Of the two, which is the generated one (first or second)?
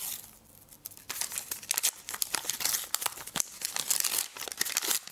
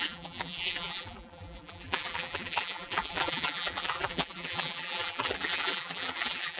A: second